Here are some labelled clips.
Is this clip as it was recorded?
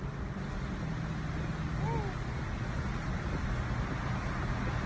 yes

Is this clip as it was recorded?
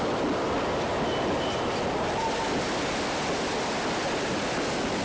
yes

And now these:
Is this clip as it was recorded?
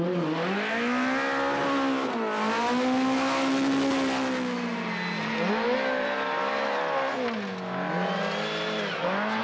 yes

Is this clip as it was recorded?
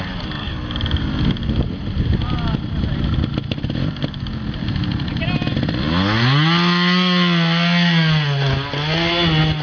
yes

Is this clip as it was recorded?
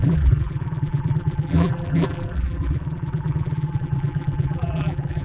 no